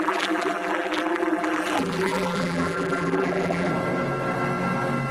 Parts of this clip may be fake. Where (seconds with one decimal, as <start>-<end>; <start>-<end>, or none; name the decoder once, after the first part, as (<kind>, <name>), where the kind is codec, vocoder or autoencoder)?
0.0-3.7 (vocoder, BigVGAN v2)